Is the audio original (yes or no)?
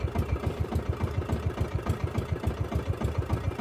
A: yes